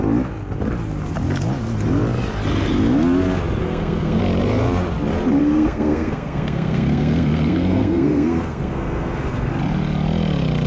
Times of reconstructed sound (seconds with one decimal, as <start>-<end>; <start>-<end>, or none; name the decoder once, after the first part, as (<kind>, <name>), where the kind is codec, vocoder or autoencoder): 3.6-4.2 (codec, SNAC); 5.4-9.5